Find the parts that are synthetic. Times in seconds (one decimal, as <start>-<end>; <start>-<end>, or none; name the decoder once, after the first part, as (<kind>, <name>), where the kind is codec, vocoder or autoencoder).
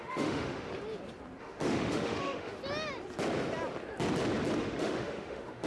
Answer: 0.0-0.7 (autoencoder, DAC-VAE); 1.4-2.6; 4.6-5.7